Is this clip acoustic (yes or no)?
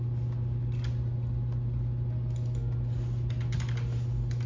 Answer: yes